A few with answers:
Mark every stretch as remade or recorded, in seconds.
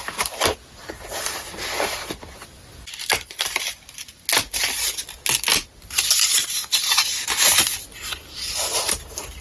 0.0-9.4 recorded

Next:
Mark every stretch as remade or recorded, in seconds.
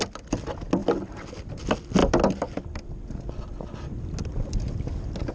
0.0-5.3 recorded